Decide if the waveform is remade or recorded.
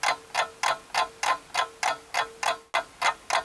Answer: recorded